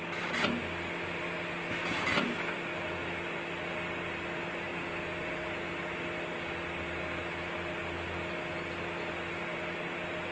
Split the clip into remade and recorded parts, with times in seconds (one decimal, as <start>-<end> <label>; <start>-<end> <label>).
0.0-10.3 recorded